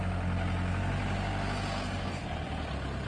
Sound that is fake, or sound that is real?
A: real